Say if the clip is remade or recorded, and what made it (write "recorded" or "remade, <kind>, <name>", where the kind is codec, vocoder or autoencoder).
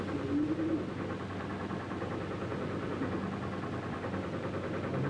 recorded